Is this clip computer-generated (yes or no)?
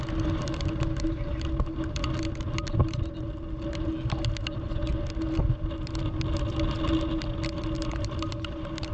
no